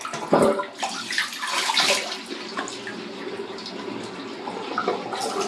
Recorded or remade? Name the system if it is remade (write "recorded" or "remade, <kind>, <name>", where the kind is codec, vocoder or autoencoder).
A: recorded